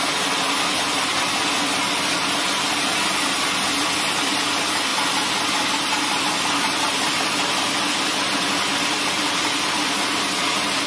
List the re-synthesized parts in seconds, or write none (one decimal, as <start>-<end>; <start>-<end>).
none